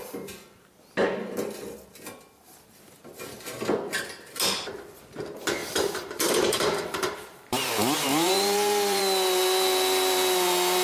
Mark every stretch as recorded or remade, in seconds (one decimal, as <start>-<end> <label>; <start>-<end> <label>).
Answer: 0.0-5.6 recorded; 5.6-9.0 remade; 9.0-10.8 recorded